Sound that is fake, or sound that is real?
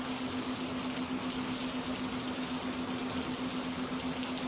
real